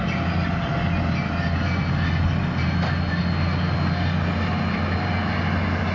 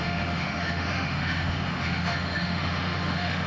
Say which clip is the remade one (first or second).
second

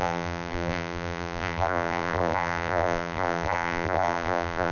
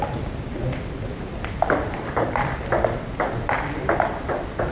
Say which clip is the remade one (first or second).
first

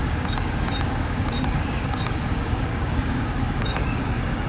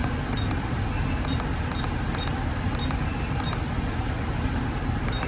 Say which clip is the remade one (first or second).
first